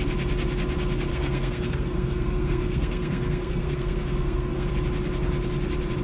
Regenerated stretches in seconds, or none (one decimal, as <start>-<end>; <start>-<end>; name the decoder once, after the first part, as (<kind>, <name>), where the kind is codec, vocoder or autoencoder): 1.1-4.7 (codec, SNAC)